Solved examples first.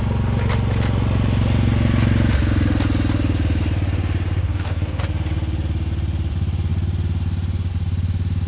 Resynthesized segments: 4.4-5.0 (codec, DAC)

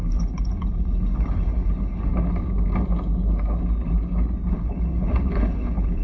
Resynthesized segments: 0.0-2.1 (codec, HILCodec); 4.5-6.0

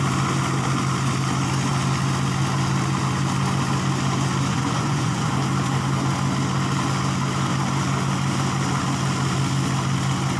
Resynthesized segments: 4.5-5.3 (vocoder, Vocos)

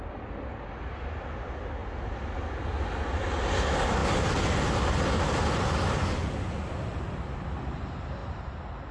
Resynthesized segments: none

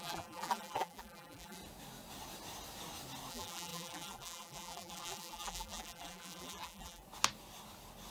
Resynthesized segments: 0.0-1.6 (vocoder, BigVGAN v2); 3.3-7.0